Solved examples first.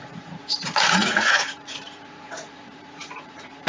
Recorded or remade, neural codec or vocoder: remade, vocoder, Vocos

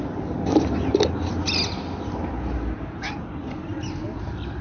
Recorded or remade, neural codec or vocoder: recorded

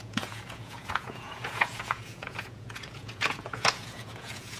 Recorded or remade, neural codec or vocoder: remade, vocoder, Vocos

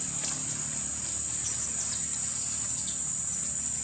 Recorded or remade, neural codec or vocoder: recorded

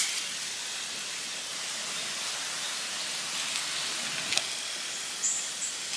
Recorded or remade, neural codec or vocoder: recorded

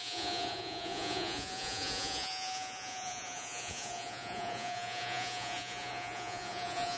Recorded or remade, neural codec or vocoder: remade, vocoder, Vocos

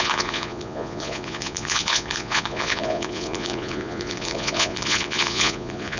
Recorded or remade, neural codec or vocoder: remade, vocoder, Vocos